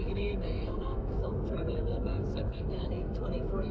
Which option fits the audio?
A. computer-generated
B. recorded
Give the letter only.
A